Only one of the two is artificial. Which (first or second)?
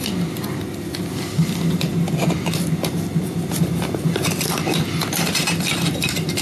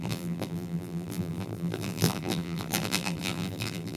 second